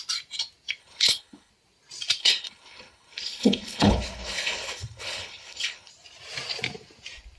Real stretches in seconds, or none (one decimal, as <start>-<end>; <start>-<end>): 0.0-0.8; 1.5-2.2; 5.9-7.4